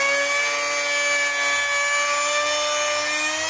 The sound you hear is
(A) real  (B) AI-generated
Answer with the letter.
A